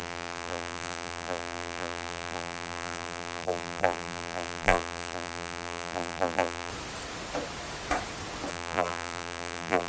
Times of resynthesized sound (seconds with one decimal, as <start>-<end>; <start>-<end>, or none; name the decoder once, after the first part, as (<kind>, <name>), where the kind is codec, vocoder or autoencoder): 0.0-6.7 (vocoder, BigVGAN v2); 8.5-9.9